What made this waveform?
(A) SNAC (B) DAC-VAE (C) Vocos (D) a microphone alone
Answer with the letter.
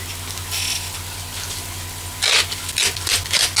D